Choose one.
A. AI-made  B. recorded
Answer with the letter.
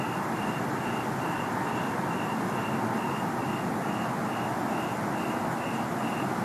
B